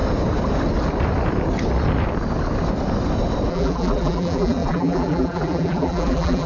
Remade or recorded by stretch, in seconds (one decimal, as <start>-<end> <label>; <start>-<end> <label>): 0.0-3.5 recorded; 3.5-6.5 remade